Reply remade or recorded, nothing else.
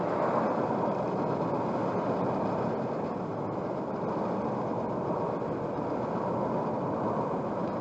recorded